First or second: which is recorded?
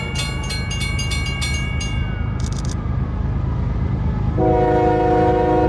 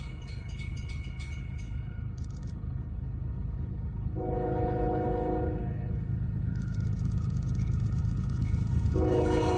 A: first